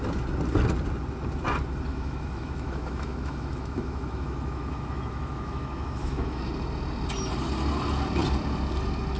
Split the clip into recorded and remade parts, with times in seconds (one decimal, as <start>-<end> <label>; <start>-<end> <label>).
0.0-1.9 recorded; 1.9-6.4 remade; 6.4-9.2 recorded